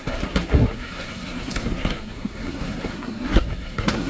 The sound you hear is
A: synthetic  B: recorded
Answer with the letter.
A